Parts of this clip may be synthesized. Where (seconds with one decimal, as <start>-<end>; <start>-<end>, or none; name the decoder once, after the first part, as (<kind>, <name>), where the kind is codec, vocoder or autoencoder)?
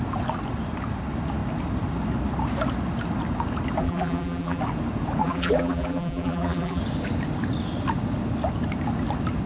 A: 3.8-4.6 (vocoder, BigVGAN v2); 5.2-6.8